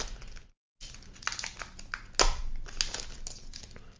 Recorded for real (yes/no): yes